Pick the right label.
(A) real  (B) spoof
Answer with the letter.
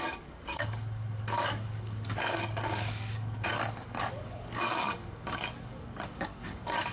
B